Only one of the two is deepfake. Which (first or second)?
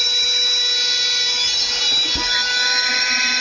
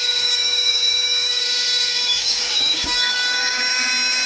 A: second